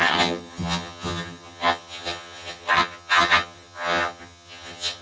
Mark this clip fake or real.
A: fake